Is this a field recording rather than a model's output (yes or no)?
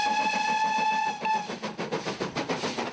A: yes